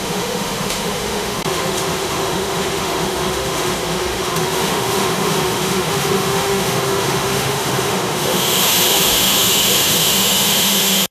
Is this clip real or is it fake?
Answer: fake